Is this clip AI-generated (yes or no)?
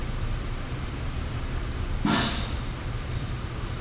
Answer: yes